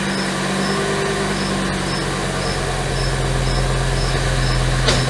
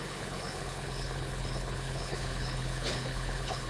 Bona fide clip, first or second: first